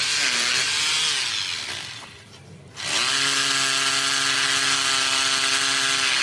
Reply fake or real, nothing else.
real